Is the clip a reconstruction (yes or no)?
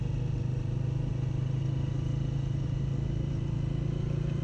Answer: no